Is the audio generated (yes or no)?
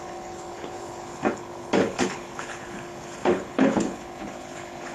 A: yes